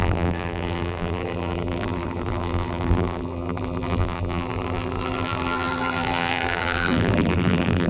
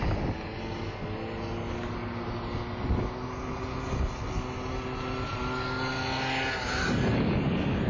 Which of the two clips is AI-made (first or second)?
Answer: first